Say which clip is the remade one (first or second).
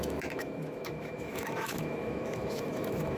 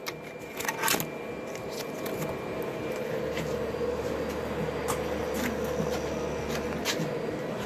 first